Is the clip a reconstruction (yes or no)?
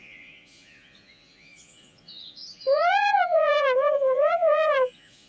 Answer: yes